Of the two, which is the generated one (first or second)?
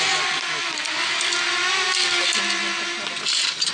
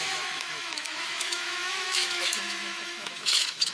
second